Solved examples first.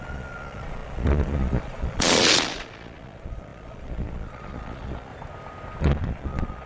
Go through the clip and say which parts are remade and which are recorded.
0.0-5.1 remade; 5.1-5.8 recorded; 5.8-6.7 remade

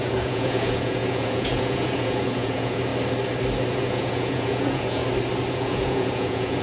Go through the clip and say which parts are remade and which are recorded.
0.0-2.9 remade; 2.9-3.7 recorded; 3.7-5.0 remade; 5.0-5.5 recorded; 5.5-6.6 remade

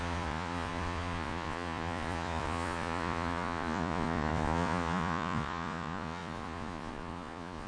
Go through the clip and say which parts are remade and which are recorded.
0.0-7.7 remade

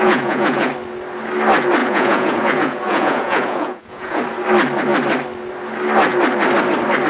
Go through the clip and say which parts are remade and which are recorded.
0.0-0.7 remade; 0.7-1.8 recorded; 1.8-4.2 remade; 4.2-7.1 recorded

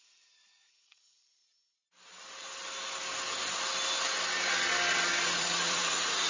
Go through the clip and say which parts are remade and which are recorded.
0.0-1.4 remade; 1.4-5.2 recorded; 5.2-6.3 remade

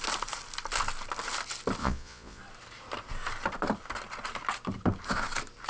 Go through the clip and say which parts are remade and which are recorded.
0.0-1.8 recorded; 1.8-2.4 remade; 2.4-5.7 recorded

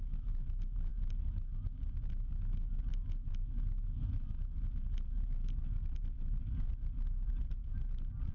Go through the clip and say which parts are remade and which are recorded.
0.0-8.3 recorded